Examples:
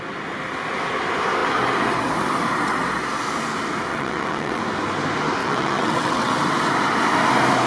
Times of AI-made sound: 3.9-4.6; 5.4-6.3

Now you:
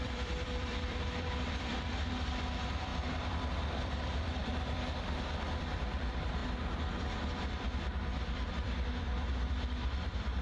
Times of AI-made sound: 0.0-6.4; 8.5-10.4

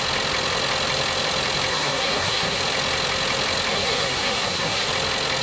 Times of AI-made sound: 1.7-2.6; 3.7-4.9